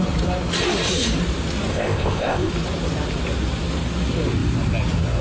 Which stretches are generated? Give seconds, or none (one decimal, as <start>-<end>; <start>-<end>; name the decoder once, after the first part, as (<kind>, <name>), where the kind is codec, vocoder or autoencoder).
1.7-2.5 (codec, ZipCodec)